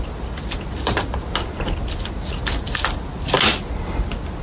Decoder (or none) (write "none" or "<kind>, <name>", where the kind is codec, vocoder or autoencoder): none